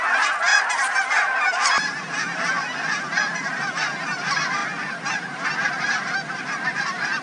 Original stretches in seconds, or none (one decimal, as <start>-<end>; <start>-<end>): 0.0-0.5; 2.0-7.2